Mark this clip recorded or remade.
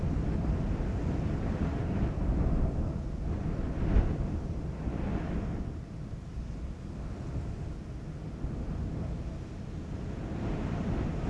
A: recorded